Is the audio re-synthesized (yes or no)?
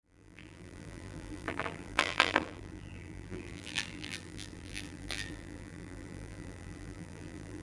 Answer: yes